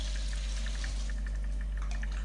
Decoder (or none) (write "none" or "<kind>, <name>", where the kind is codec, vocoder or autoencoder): none